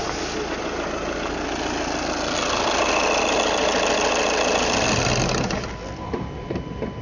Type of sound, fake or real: real